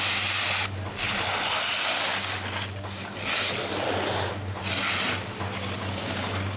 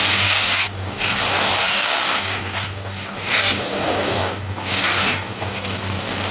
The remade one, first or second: second